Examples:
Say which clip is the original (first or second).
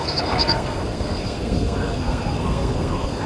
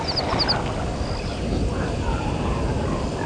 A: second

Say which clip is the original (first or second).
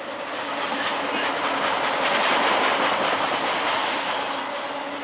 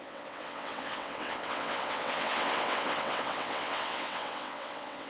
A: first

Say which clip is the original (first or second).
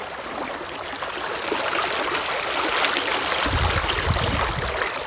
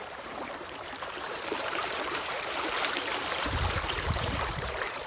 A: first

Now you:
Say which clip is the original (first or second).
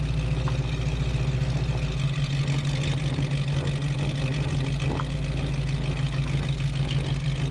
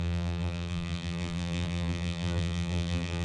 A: first